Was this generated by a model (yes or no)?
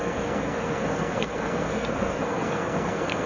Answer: yes